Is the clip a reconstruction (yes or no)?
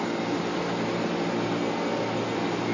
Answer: no